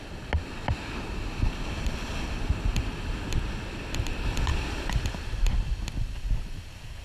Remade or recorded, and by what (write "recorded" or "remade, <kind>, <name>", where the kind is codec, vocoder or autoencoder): recorded